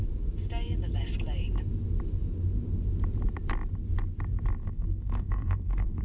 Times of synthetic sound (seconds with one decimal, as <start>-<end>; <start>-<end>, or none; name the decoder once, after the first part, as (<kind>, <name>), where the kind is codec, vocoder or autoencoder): 4.6-6.0 (codec, SNAC)

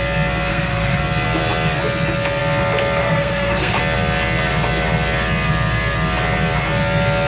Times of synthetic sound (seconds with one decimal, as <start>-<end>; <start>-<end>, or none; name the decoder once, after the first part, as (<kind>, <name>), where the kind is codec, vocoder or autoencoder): 0.5-1.0 (codec, SNAC); 3.0-3.8

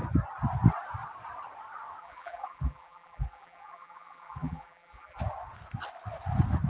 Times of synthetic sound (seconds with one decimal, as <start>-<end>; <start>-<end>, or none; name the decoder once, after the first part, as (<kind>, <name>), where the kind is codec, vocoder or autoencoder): 2.0-5.2 (vocoder, BigVGAN v2)

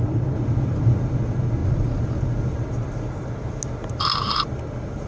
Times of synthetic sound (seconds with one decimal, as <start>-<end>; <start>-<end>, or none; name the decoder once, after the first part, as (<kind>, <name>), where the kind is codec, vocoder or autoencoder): none

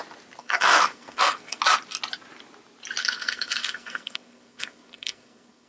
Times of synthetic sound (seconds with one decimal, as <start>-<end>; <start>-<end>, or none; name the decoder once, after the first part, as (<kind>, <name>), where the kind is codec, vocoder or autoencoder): 0.4-1.6 (codec, SNAC); 3.0-5.7

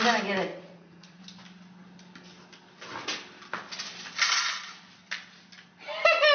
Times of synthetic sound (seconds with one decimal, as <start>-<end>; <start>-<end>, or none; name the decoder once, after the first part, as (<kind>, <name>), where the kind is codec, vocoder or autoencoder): 0.5-1.2 (vocoder, Vocos)

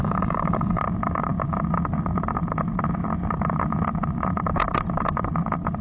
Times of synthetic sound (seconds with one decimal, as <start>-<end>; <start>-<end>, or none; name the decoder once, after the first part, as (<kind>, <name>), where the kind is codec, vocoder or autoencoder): 0.0-0.8 (codec, DAC)

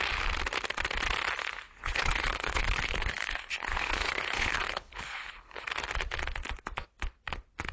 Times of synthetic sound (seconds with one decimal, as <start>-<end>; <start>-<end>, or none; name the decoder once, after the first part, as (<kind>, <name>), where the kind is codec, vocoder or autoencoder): 1.8-5.7 (codec, HILCodec)